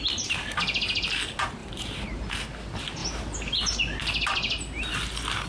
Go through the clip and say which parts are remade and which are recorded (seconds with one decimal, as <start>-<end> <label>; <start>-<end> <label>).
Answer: 0.0-0.6 remade; 0.6-1.6 recorded; 1.6-2.3 remade; 2.3-5.5 recorded